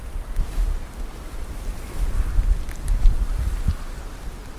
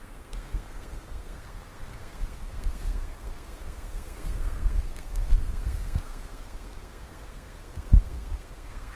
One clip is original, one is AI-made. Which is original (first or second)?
first